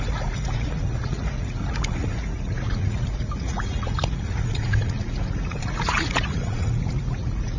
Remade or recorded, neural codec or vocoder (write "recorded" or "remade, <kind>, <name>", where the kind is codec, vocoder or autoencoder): remade, vocoder, Vocos